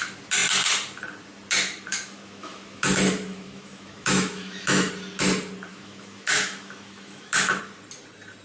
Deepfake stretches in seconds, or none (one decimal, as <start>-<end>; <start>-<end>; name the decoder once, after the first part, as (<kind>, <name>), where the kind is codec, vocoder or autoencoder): 1.9-4.9 (autoencoder, DAC-VAE); 5.7-7.6